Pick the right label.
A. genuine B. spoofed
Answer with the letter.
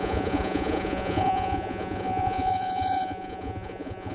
B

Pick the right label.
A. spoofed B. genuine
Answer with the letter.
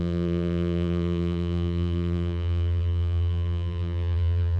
A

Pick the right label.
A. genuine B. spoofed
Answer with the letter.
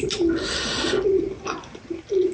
A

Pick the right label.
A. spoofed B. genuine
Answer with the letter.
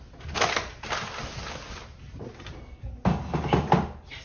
B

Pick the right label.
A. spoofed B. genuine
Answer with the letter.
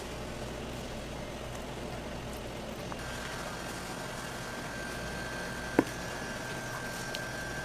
B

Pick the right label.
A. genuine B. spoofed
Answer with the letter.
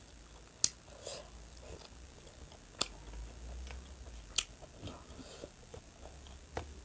A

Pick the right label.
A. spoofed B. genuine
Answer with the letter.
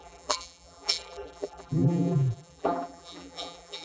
A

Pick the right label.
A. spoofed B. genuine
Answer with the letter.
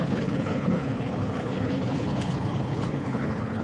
A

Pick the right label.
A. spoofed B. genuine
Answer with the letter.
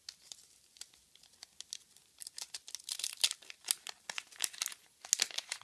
B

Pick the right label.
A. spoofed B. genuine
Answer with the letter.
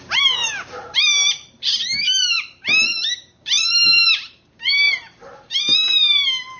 A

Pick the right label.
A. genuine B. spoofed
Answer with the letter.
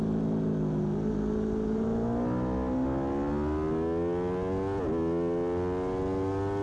A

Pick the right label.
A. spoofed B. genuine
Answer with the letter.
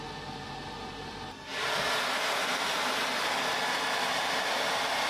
B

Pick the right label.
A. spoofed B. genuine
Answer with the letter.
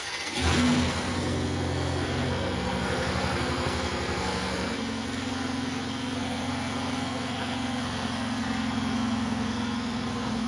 A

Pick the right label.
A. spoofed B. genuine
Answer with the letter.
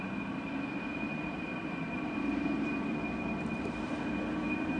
A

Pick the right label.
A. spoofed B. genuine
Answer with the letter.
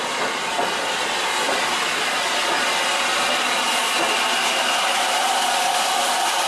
B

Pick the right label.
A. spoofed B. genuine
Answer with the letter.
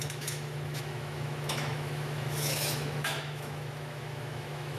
A